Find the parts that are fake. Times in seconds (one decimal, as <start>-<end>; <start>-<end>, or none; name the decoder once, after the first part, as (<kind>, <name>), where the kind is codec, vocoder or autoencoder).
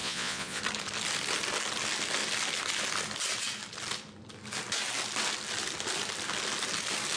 0.0-0.6 (vocoder, Vocos)